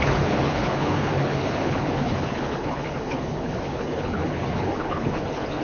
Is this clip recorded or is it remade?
remade